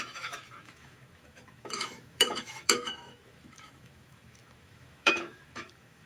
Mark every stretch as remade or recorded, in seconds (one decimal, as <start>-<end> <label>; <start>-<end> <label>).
0.0-6.1 remade